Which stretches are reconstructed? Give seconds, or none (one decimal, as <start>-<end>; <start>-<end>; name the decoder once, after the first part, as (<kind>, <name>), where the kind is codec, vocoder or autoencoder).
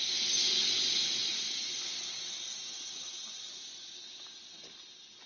none